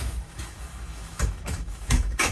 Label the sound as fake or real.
fake